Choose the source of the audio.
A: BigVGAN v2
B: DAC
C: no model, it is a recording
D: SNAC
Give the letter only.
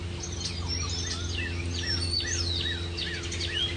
C